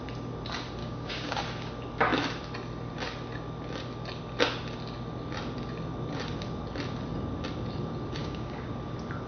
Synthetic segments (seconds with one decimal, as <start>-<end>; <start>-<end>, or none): 0.8-1.4; 8.2-8.7